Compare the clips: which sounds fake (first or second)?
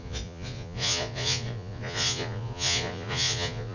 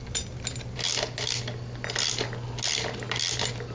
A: first